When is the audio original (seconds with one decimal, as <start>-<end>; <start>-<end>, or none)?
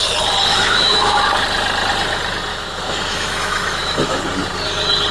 0.0-0.5; 1.2-2.5; 4.2-5.1